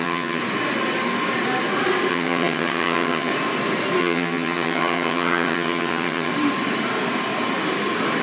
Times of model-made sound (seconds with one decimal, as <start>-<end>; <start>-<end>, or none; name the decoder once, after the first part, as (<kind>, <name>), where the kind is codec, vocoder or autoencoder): 0.0-0.4 (vocoder, HiFi-GAN); 2.1-3.3; 4.0-6.3